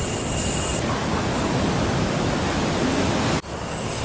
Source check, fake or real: real